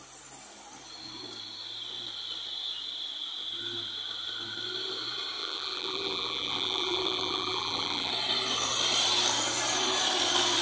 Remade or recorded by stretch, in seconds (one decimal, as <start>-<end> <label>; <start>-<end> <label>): 0.0-5.4 recorded; 5.4-8.1 remade; 8.1-10.6 recorded